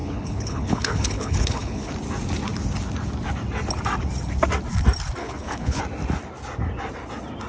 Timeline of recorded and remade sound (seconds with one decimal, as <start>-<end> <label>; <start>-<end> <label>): 0.0-1.9 remade; 1.9-5.2 recorded; 5.2-5.8 remade; 5.8-7.5 recorded

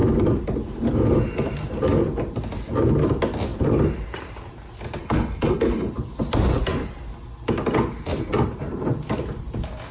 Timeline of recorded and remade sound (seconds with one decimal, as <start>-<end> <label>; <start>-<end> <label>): 0.0-5.0 recorded; 5.0-5.9 remade; 5.9-9.9 recorded

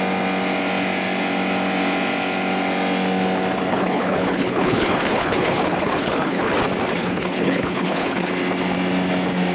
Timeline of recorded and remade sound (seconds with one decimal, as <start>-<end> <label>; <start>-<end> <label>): 0.0-3.7 recorded; 3.7-6.5 remade; 6.5-6.9 recorded; 6.9-8.3 remade; 8.3-9.5 recorded

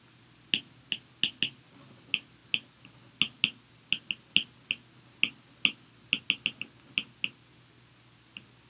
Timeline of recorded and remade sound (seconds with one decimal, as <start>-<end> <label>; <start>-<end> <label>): 0.0-8.7 recorded

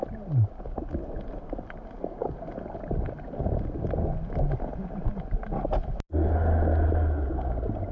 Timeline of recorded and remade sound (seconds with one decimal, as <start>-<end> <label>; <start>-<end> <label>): 0.0-7.9 recorded

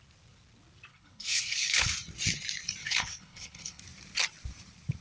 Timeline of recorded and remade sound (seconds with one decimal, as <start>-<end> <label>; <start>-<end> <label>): 0.0-0.9 recorded; 0.9-1.9 remade; 1.9-2.8 recorded; 2.8-3.8 remade; 3.8-5.0 recorded

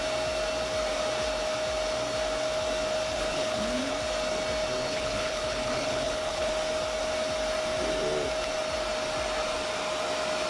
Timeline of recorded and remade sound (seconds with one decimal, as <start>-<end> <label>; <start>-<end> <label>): 0.0-3.1 recorded; 3.1-3.9 remade; 3.9-4.8 recorded; 4.8-6.5 remade; 6.5-10.5 recorded

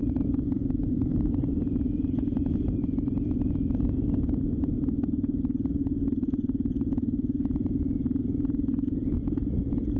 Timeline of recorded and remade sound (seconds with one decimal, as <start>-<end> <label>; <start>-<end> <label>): 0.0-10.0 recorded